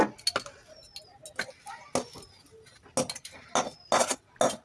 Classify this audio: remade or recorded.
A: recorded